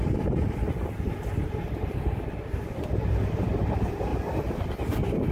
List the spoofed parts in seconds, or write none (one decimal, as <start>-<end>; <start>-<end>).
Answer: 1.4-3.2